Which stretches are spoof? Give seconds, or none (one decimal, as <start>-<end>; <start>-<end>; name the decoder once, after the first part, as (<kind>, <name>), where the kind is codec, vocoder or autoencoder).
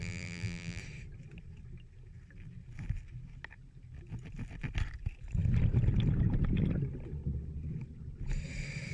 0.0-0.8 (vocoder, BigVGAN v2)